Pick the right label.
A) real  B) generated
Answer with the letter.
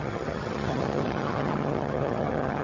B